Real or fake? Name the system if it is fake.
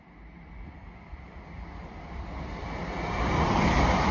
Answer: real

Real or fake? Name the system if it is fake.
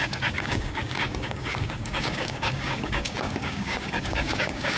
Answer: fake, codec, DAC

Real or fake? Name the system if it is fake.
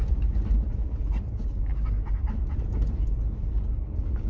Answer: real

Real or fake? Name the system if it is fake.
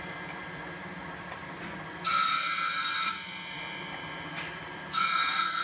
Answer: fake, vocoder, BigVGAN v2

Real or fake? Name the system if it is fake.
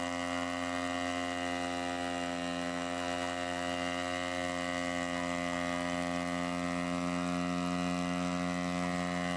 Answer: real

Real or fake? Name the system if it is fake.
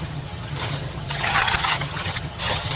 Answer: fake, vocoder, HiFi-GAN